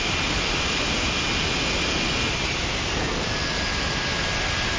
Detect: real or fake real